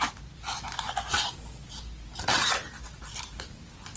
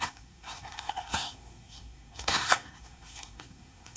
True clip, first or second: first